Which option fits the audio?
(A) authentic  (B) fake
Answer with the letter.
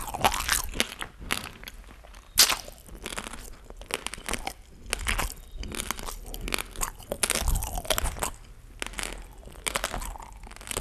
A